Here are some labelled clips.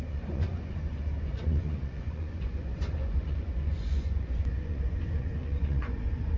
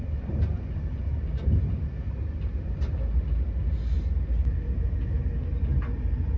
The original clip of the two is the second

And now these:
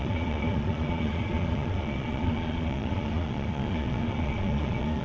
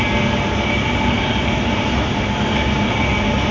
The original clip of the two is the second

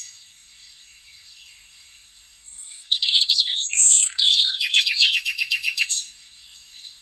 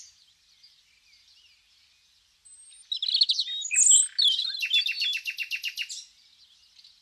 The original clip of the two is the second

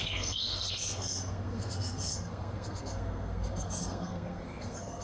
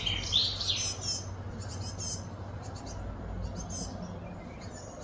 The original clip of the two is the second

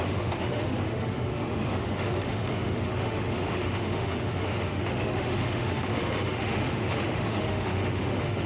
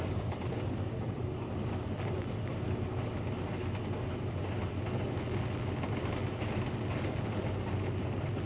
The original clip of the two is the second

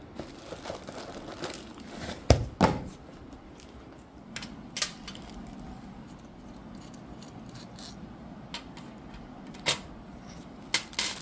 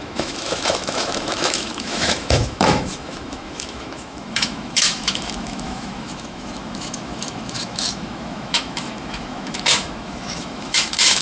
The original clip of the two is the first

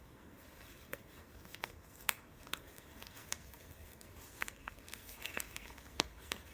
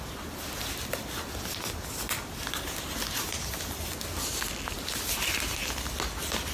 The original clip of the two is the second